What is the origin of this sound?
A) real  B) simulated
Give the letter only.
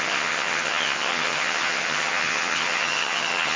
B